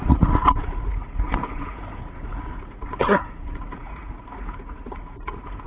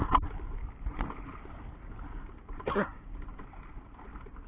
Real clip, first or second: second